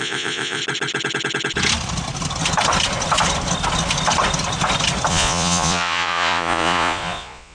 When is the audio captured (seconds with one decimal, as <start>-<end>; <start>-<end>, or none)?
0.6-5.1